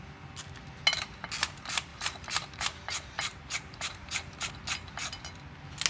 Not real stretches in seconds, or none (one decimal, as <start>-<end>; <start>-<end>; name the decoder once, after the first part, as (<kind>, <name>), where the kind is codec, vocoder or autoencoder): 1.9-4.5 (vocoder, BigVGAN v2)